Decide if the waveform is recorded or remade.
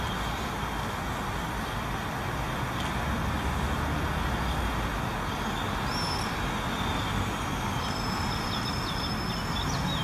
recorded